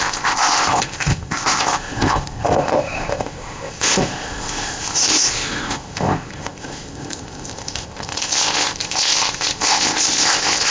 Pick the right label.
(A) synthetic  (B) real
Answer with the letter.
A